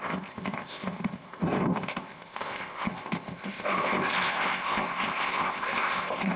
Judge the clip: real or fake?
fake